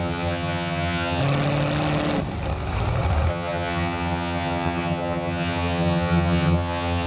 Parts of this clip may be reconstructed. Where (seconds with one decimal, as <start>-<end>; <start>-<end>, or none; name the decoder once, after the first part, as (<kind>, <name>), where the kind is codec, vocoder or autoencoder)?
0.0-1.2 (vocoder, HiFi-GAN); 3.3-7.1